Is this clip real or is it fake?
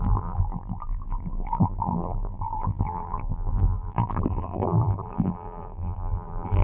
fake